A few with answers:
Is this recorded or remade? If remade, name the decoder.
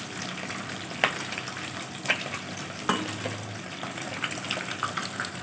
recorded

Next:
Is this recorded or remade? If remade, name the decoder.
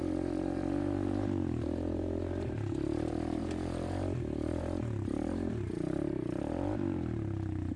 remade, vocoder, BigVGAN v2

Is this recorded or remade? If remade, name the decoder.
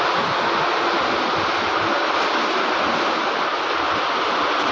recorded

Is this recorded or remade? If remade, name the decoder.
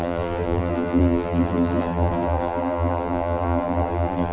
remade, vocoder, BigVGAN v2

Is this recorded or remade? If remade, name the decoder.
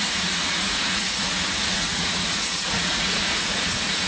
remade, vocoder, Vocos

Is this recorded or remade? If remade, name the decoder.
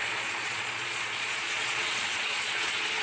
remade, vocoder, Vocos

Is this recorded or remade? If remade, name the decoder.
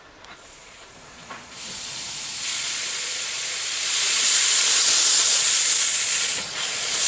remade, vocoder, Vocos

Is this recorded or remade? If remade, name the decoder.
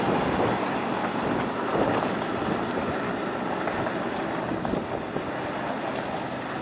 recorded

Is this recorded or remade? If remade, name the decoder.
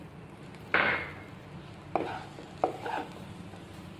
recorded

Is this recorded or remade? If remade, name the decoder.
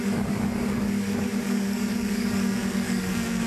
remade, codec, DAC